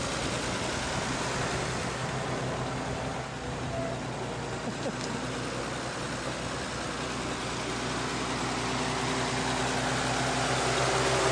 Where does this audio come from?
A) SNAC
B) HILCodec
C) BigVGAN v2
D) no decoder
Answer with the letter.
D